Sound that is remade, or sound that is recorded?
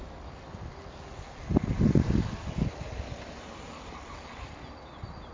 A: recorded